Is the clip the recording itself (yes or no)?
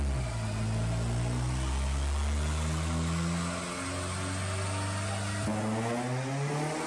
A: yes